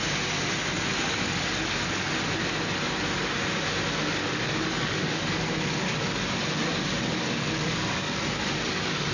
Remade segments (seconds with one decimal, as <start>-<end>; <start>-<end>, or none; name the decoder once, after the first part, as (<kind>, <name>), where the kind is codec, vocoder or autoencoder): 0.9-2.1 (codec, DAC); 4.2-6.3; 6.7-9.1